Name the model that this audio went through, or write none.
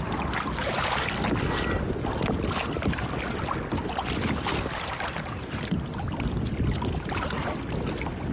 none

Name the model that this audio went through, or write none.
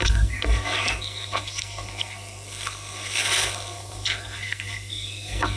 codec, SNAC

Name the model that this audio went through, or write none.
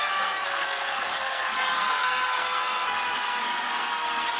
codec, SNAC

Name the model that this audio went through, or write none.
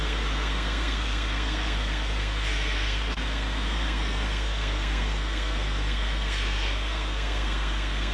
codec, SNAC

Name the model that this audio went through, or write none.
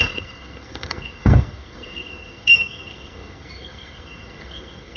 codec, SNAC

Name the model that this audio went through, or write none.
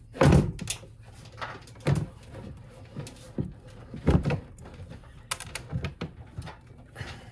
none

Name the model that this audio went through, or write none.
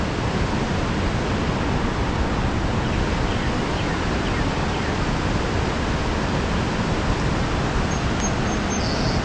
none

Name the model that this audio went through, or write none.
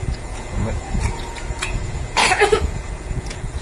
vocoder, Vocos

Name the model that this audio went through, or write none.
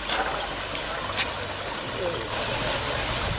none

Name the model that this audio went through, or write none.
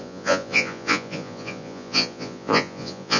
vocoder, Vocos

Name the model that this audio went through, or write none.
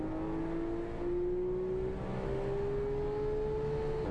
none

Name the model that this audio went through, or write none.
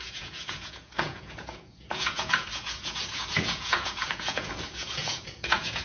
vocoder, Vocos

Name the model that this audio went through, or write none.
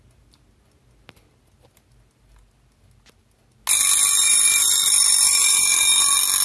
none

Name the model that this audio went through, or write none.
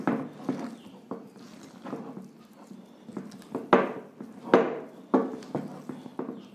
none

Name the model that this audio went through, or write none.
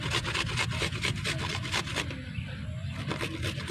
none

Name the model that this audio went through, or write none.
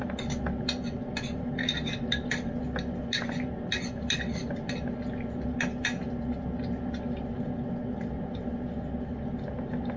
none